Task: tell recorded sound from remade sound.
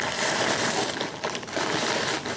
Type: recorded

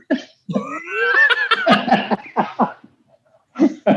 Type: recorded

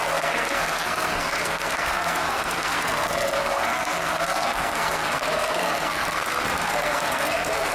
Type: remade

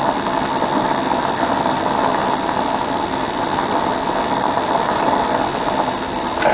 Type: recorded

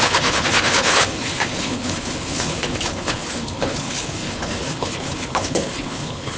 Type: remade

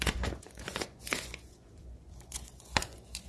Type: remade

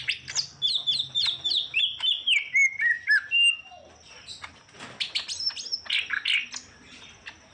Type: recorded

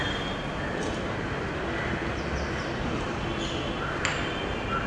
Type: recorded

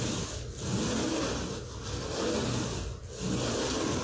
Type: recorded